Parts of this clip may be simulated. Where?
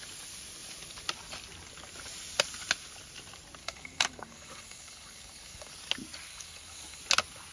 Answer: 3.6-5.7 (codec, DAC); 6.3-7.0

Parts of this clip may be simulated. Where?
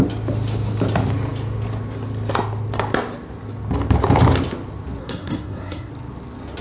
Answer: 5.0-5.9 (codec, SNAC)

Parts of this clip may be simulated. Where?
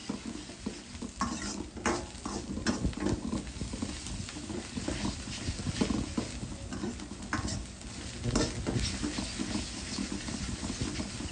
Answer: none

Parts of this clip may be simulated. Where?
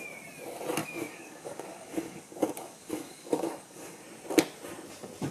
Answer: 0.8-4.0 (codec, DAC)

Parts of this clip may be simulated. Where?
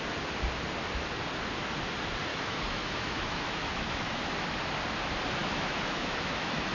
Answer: 2.3-4.2 (autoencoder, DAC-VAE); 5.4-6.7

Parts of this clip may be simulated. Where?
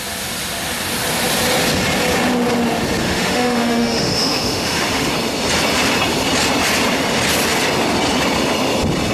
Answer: 3.0-5.1 (autoencoder, DAC-VAE)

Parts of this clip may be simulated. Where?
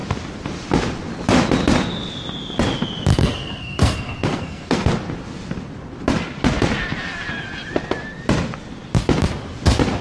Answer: 3.1-4.9 (codec, SNAC)